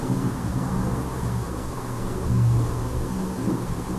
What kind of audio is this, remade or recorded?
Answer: remade